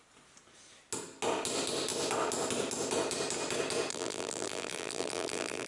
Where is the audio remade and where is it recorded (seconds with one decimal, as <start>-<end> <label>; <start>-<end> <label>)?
0.0-3.9 recorded; 3.9-5.7 remade